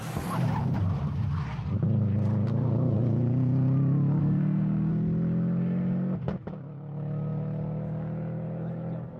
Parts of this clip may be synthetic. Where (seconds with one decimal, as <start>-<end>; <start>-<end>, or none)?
4.2-4.9